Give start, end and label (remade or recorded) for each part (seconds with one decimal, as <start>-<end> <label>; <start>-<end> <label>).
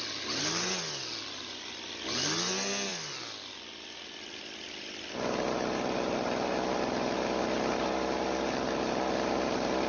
0.0-9.9 recorded